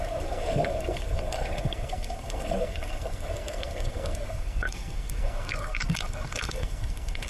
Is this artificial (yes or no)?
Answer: yes